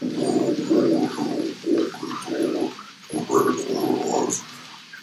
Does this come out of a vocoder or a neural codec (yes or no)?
no